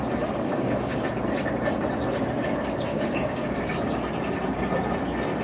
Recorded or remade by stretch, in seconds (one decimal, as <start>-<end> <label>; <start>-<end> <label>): 0.0-0.5 recorded; 0.5-1.2 remade; 1.2-2.9 recorded; 2.9-3.6 remade; 3.6-5.4 recorded